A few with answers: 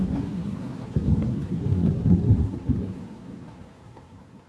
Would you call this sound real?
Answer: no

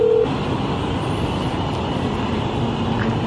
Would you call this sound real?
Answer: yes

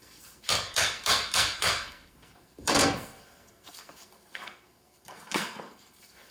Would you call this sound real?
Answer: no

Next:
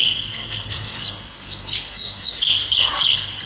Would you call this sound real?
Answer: no